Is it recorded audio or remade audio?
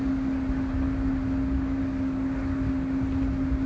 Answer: recorded